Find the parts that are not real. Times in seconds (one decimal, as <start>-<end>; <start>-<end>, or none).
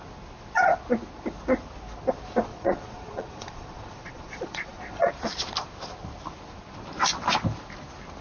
2.5-5.1